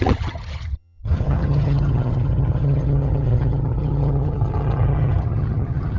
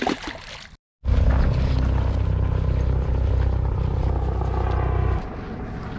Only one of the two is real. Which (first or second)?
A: second